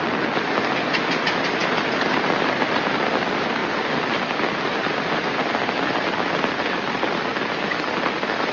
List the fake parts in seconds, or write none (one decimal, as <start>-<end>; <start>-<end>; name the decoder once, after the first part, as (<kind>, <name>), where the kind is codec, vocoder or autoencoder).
0.0-3.6 (vocoder, BigVGAN v2); 5.8-7.3; 8.0-8.5